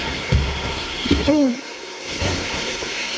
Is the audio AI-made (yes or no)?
yes